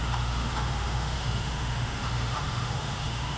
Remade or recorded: remade